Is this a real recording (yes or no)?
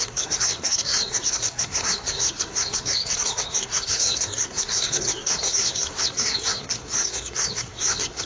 no